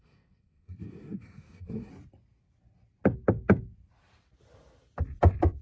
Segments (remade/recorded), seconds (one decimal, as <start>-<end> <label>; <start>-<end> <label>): 0.0-1.9 remade; 1.9-5.6 recorded